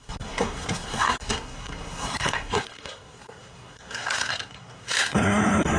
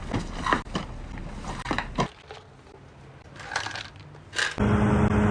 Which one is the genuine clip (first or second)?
second